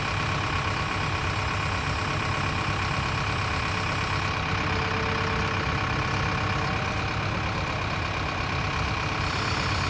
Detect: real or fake real